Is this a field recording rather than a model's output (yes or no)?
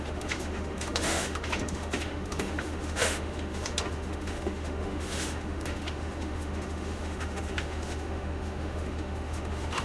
no